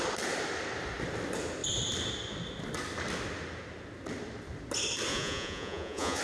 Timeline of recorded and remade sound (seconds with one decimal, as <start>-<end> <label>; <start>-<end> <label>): 0.0-5.1 recorded; 5.1-6.2 remade